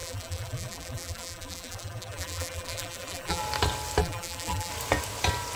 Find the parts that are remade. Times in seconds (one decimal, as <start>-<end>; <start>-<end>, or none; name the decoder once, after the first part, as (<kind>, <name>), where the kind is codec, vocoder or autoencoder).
0.0-3.4 (vocoder, BigVGAN v2); 4.0-4.7

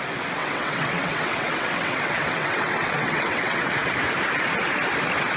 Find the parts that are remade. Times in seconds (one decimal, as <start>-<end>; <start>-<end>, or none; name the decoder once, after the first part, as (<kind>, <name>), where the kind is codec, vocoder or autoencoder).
0.4-3.6 (vocoder, WaveNeXt)

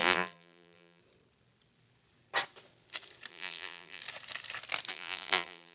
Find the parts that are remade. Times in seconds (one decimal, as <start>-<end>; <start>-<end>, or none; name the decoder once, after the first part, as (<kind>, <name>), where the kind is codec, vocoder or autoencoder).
0.0-1.0 (vocoder, BigVGAN v2); 3.3-4.0; 4.9-5.7

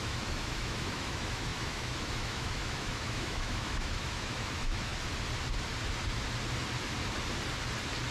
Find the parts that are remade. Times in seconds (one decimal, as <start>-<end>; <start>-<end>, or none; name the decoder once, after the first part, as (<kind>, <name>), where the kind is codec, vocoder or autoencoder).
0.0-4.9 (autoencoder, DAC-VAE)

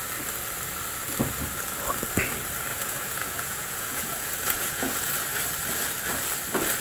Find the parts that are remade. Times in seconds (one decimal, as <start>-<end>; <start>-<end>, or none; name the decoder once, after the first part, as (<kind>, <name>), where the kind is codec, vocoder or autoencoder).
2.7-5.1 (vocoder, Vocos)